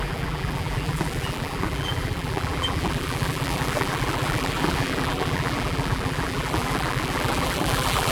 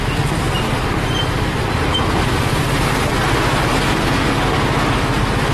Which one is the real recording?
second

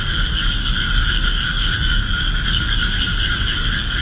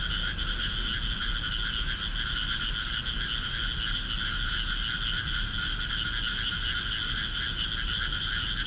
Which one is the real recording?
second